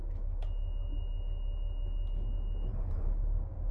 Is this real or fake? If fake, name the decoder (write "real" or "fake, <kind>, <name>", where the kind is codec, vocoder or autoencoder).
real